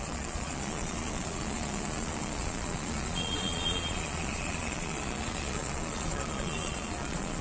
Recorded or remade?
remade